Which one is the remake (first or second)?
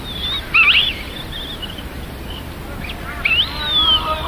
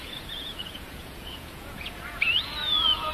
second